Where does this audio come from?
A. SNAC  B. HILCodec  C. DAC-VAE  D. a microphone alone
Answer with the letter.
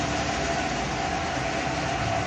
D